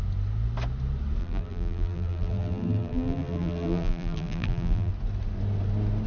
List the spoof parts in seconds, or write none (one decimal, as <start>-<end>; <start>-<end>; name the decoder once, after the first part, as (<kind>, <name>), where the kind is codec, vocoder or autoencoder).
1.2-4.9 (vocoder, BigVGAN v2)